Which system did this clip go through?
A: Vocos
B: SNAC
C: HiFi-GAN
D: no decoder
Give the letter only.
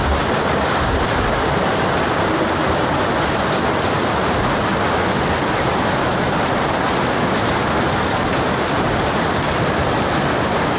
D